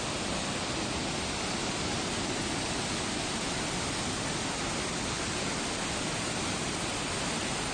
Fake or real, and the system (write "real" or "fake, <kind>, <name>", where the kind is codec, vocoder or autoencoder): real